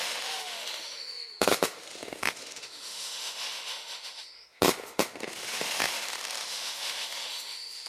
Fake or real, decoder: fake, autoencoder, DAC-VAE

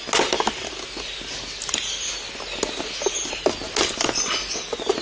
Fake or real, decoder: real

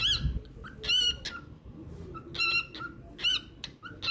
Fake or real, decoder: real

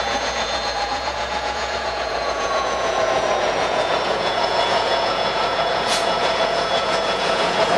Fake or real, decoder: fake, vocoder, Vocos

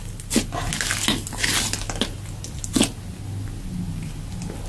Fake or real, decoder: real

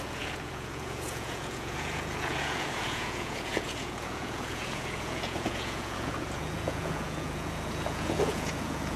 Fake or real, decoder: fake, vocoder, Vocos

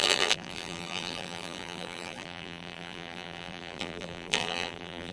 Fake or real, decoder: fake, vocoder, BigVGAN v2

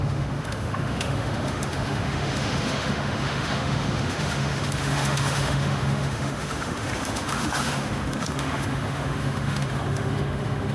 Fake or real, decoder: fake, autoencoder, DAC-VAE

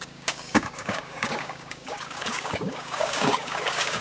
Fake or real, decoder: fake, codec, DAC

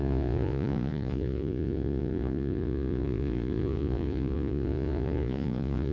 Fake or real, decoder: fake, vocoder, Vocos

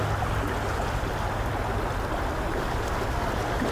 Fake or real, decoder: real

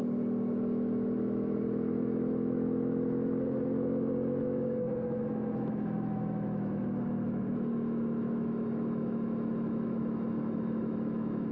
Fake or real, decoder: fake, autoencoder, DAC-VAE